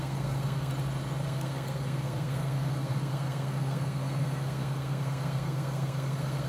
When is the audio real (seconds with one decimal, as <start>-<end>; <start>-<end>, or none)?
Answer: 0.7-1.2